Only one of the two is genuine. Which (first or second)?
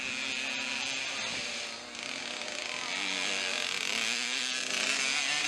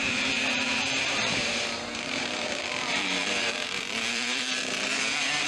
first